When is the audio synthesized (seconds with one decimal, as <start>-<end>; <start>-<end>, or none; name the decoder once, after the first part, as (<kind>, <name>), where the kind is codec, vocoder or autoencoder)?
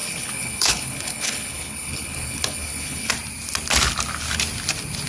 0.0-3.1 (codec, HILCodec)